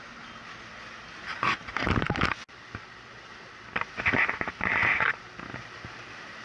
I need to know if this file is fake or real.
real